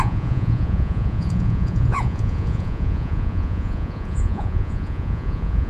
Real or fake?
fake